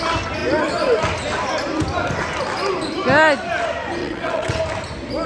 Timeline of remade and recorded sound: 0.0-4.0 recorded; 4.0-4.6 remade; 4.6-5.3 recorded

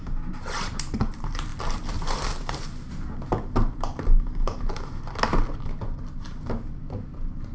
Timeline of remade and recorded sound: 0.0-1.5 recorded; 1.5-2.9 remade; 2.9-3.3 recorded; 3.3-4.6 remade; 4.6-7.5 recorded

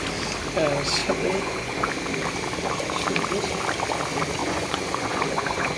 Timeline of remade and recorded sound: 0.0-1.0 recorded; 1.0-1.9 remade; 1.9-4.4 recorded; 4.4-5.8 remade

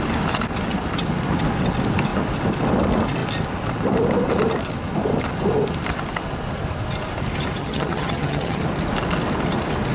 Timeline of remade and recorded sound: 0.0-7.6 recorded; 7.6-8.6 remade; 8.6-9.9 recorded

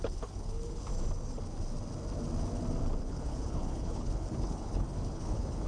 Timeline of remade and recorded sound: 0.0-0.9 remade; 0.9-3.0 recorded; 3.0-5.7 remade

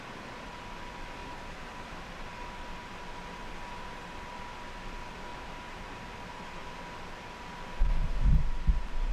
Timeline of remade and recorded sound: 0.0-1.2 recorded; 1.2-2.3 remade; 2.3-5.3 recorded; 5.3-5.9 remade; 5.9-9.1 recorded

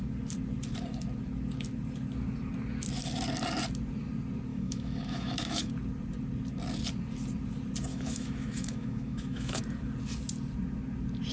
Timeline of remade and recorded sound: 0.0-4.5 recorded; 4.5-5.7 remade; 5.7-7.9 recorded; 7.9-9.6 remade; 9.6-11.3 recorded

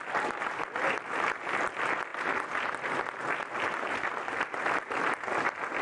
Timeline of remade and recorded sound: 0.0-5.8 recorded